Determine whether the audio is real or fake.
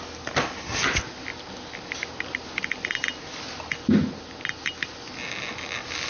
real